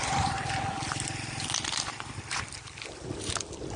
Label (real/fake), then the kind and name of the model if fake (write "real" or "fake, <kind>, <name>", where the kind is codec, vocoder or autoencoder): real